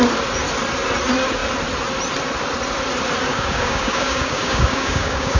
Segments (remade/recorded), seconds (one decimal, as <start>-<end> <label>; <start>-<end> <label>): 0.0-3.3 recorded; 3.3-5.4 remade